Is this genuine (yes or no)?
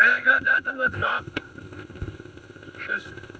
no